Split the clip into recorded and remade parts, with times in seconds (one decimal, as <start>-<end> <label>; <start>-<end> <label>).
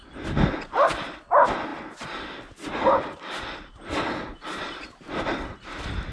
0.0-6.1 recorded